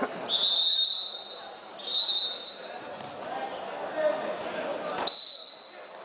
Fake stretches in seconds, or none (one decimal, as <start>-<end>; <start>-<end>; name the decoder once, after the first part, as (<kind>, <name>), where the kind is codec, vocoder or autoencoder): none